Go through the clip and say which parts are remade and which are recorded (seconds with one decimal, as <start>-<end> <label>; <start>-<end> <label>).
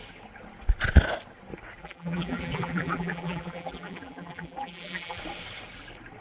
0.0-1.8 recorded; 1.8-5.2 remade; 5.2-6.2 recorded